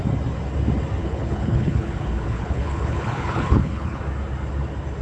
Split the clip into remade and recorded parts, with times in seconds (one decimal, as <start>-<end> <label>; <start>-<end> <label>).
0.0-1.0 recorded; 1.0-4.0 remade; 4.0-5.0 recorded